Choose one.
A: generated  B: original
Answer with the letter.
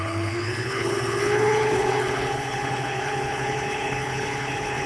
A